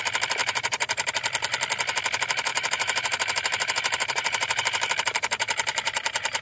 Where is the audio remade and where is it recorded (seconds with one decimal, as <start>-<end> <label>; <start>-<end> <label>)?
0.0-0.4 recorded; 0.4-1.1 remade; 1.1-2.5 recorded; 2.5-6.4 remade